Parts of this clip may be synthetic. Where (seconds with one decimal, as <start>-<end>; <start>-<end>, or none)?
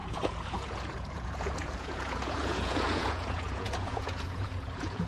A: 0.0-5.1